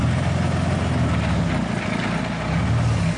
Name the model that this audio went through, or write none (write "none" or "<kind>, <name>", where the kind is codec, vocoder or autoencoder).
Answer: none